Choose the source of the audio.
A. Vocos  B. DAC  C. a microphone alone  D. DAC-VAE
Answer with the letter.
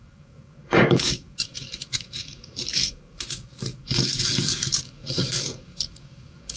B